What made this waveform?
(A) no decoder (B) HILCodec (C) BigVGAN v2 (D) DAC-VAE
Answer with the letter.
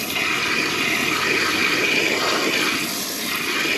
C